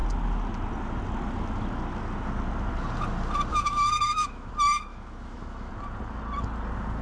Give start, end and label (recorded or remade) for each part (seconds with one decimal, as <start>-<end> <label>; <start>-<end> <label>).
0.0-3.5 recorded; 3.5-4.5 remade; 4.5-4.9 recorded; 4.9-5.7 remade; 5.7-7.0 recorded